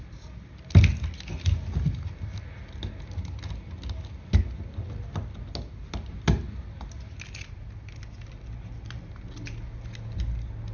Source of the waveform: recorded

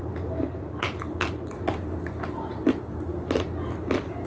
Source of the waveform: recorded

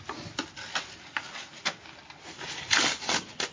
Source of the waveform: recorded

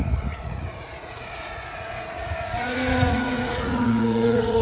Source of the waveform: remade